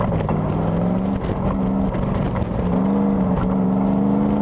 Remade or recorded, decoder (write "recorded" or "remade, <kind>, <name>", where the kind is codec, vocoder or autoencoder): recorded